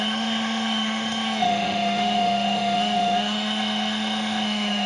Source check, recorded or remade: remade